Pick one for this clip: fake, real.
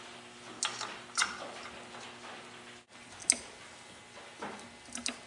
real